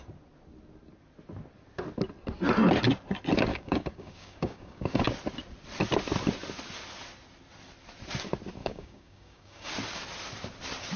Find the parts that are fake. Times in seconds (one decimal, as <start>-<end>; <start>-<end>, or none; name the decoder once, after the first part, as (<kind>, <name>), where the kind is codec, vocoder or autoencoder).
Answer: 3.5-5.0 (codec, DAC); 8.6-9.7